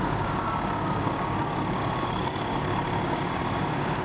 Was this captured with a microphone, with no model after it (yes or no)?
no